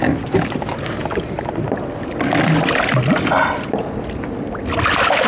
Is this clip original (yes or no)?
yes